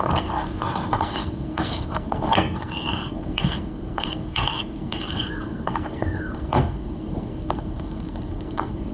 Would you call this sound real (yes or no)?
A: no